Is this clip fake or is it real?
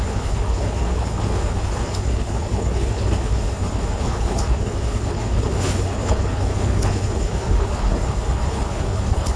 fake